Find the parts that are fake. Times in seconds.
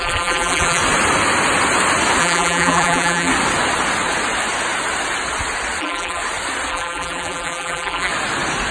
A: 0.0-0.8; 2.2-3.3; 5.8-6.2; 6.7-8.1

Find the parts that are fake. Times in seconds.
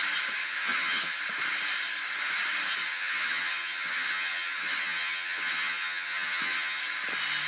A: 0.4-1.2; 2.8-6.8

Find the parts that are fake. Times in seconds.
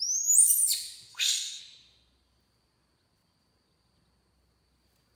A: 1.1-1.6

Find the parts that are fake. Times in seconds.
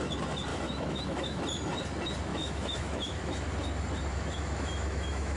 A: 0.5-1.4; 2.3-3.5; 4.1-5.4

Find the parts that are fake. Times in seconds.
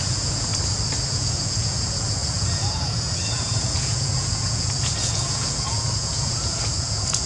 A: 0.0-0.5; 1.1-7.3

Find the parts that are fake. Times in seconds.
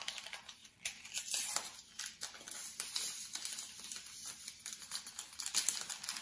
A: none